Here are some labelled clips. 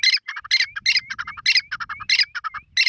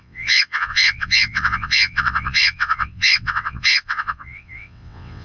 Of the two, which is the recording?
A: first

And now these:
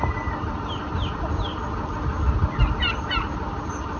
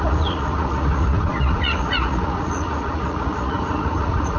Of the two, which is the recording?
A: first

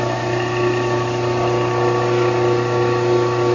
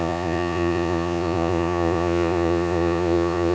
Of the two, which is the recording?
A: first